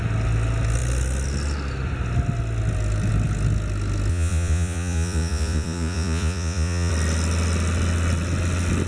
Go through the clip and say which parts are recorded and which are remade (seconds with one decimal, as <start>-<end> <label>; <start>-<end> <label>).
0.0-4.1 recorded; 4.1-6.9 remade; 6.9-8.9 recorded